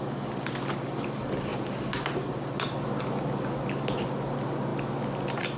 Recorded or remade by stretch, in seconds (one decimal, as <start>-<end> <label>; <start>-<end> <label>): 0.0-5.6 recorded